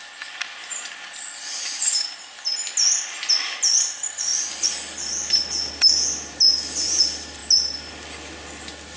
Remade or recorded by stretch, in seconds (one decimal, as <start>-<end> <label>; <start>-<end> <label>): 0.0-9.0 recorded